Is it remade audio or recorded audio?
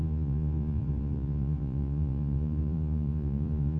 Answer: remade